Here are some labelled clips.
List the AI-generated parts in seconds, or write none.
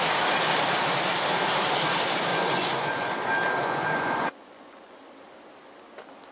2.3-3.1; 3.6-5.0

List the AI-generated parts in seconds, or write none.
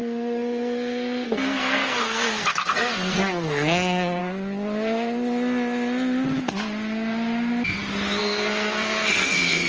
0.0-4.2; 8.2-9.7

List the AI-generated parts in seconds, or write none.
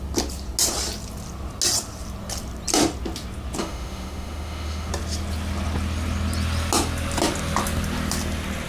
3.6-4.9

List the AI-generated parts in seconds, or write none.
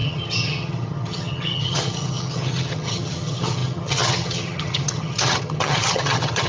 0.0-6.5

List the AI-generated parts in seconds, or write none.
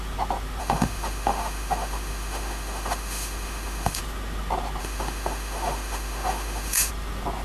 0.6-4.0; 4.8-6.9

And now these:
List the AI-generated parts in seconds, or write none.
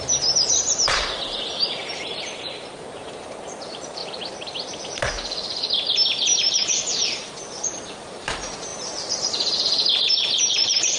0.0-4.0; 6.4-11.0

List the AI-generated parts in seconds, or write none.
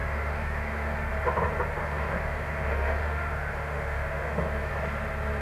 0.0-1.1; 1.8-4.7